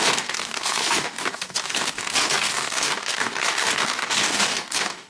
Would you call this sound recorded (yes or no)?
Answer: no